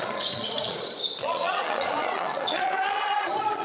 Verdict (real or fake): fake